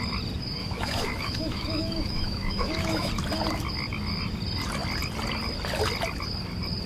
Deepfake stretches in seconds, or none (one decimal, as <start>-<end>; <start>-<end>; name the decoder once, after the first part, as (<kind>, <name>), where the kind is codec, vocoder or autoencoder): 0.6-3.1 (autoencoder, DAC-VAE)